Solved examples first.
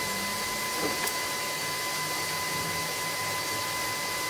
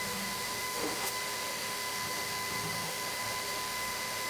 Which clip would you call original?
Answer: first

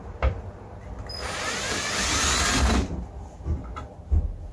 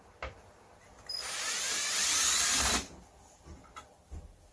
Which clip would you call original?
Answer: first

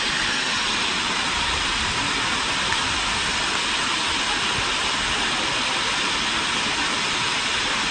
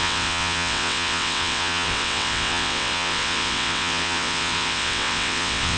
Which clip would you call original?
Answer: first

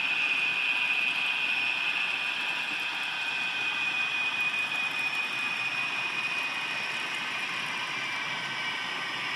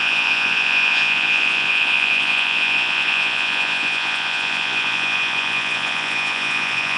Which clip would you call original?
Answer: first